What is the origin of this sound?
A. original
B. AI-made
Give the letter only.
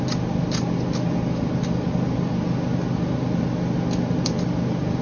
A